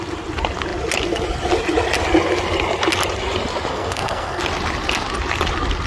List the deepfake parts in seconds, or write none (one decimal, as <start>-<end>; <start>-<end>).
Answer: 3.7-4.4